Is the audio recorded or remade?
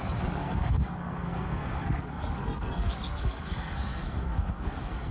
remade